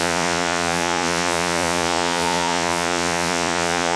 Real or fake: fake